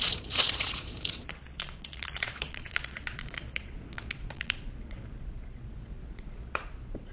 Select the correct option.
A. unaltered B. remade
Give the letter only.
B